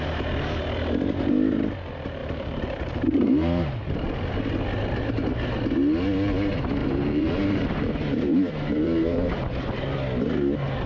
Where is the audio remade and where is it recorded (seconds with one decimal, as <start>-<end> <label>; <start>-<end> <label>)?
0.0-2.2 recorded; 2.2-4.4 remade; 4.4-6.8 recorded; 6.8-9.4 remade; 9.4-10.9 recorded